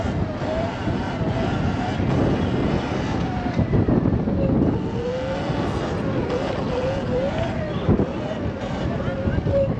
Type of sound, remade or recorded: recorded